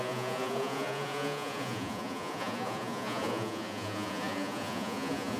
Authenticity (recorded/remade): remade